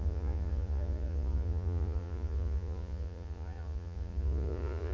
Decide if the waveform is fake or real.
fake